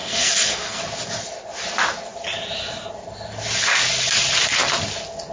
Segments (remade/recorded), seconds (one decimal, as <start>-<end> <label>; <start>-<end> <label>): 0.0-0.8 remade; 0.8-5.3 recorded